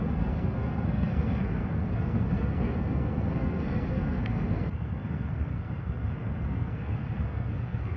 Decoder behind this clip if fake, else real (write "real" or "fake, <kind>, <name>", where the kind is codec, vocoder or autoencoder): fake, codec, SNAC